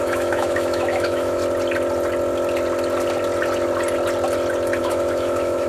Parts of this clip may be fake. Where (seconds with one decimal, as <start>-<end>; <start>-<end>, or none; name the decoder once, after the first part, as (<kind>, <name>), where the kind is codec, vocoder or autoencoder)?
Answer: 0.0-1.4 (autoencoder, DAC-VAE); 4.8-5.7